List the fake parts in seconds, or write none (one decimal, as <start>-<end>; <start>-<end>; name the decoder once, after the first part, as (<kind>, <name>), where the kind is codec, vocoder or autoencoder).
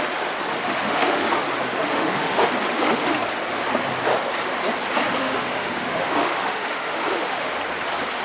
0.5-1.4 (autoencoder, DAC-VAE); 1.8-2.5; 5.2-7.5